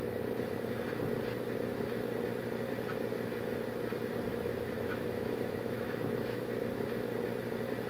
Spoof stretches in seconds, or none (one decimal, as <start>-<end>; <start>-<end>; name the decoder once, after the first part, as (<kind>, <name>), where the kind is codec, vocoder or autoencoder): 4.3-6.7 (autoencoder, DAC-VAE)